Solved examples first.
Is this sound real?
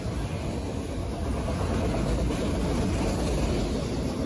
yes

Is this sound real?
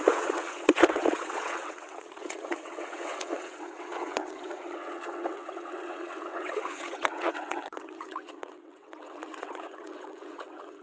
no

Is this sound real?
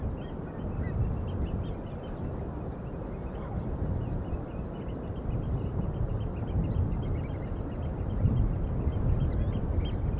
yes